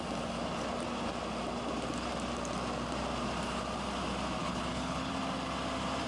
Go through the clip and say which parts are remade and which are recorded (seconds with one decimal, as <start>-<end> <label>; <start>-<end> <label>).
0.0-4.4 recorded; 4.4-5.1 remade; 5.1-6.1 recorded